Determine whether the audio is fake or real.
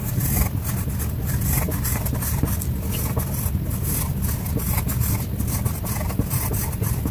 real